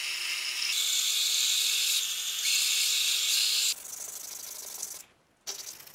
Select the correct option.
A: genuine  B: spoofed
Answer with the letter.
A